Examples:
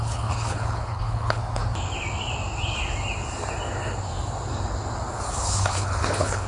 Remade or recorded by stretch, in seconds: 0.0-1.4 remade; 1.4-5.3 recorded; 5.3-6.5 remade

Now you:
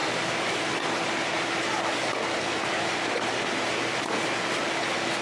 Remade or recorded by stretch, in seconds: 0.0-5.2 recorded

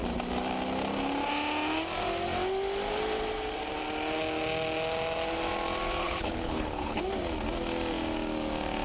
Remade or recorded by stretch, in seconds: 0.0-6.0 recorded; 6.0-7.0 remade; 7.0-8.8 recorded

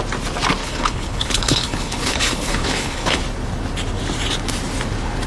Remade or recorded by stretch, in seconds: 0.0-0.6 recorded; 0.6-3.2 remade; 3.2-5.3 recorded

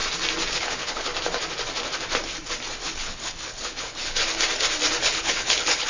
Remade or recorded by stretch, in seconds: 0.0-0.5 recorded; 0.5-1.1 remade; 1.1-2.8 recorded; 2.8-4.2 remade; 4.2-5.0 recorded; 5.0-5.9 remade

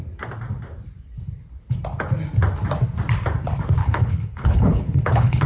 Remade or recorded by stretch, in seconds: 0.0-3.8 recorded; 3.8-5.5 remade

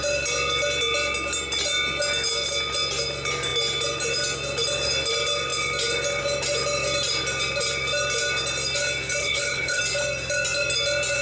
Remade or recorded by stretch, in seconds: 0.0-9.2 recorded; 9.2-9.8 remade; 9.8-11.2 recorded